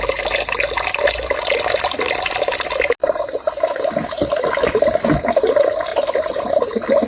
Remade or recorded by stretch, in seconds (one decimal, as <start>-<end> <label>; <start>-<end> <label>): 0.0-7.1 recorded

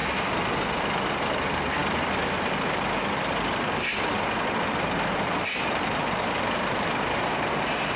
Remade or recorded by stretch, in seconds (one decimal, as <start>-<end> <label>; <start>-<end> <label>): 0.0-8.0 recorded

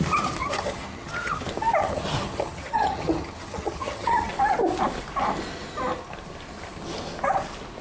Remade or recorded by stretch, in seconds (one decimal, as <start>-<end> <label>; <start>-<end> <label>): 0.0-0.4 recorded; 0.4-1.4 remade; 1.4-1.8 recorded; 1.8-4.3 remade; 4.3-7.8 recorded

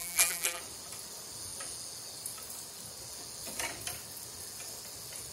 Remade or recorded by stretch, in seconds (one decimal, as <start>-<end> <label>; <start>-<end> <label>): 0.0-0.6 remade; 0.6-5.3 recorded

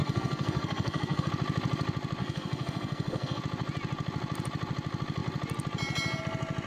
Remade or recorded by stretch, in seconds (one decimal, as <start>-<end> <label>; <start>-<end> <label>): 0.0-1.3 remade; 1.3-2.2 recorded; 2.2-3.4 remade; 3.4-6.7 recorded

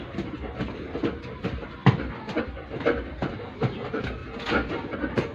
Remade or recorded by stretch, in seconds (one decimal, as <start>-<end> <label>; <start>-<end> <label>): 0.0-5.3 recorded